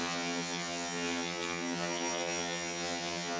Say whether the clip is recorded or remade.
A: remade